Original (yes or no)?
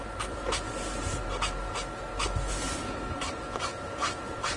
no